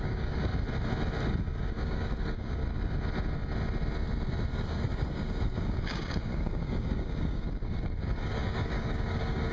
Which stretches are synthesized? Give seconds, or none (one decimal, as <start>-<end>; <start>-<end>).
0.0-0.5; 1.3-2.6; 4.5-9.5